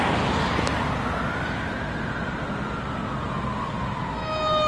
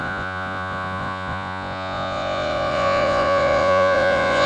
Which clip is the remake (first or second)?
second